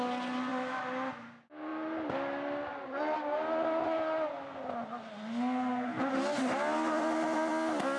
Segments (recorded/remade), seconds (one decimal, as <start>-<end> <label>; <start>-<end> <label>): 0.0-8.0 recorded